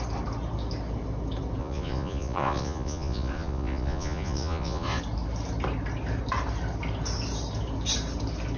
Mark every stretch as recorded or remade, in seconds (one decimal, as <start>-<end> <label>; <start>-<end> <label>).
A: 0.0-1.6 recorded; 1.6-5.0 remade; 5.0-8.6 recorded